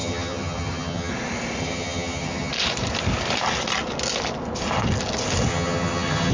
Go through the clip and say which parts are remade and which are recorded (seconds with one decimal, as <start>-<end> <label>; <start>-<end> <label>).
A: 0.0-1.1 remade; 1.1-1.6 recorded; 1.6-2.5 remade; 2.5-5.5 recorded; 5.5-6.3 remade